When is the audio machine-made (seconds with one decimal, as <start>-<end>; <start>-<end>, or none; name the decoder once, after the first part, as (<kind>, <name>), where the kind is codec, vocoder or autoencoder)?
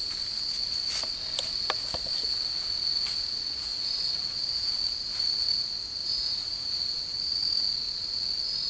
3.7-4.7 (vocoder, Vocos); 6.0-7.0